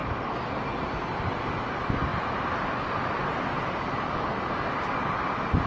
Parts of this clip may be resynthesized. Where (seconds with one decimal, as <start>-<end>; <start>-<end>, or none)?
none